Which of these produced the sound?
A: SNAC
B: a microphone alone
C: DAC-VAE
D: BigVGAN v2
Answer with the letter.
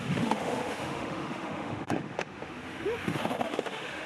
C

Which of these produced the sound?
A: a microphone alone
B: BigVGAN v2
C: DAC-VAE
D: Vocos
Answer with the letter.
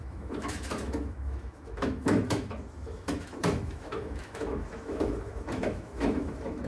C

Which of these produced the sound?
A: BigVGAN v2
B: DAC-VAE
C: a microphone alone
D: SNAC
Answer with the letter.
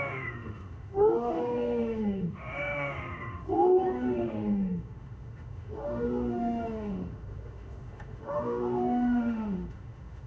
B